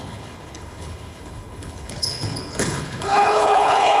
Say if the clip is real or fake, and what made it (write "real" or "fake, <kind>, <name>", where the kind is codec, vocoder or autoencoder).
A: fake, codec, HILCodec